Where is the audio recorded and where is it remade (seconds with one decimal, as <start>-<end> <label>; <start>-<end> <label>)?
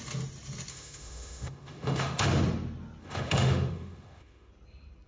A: 0.0-0.7 recorded; 0.7-2.3 remade; 2.3-3.0 recorded; 3.0-4.5 remade; 4.5-5.1 recorded